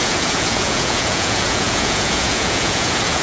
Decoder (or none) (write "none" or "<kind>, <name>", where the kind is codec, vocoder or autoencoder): vocoder, Vocos